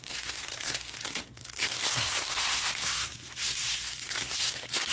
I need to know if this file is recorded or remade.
remade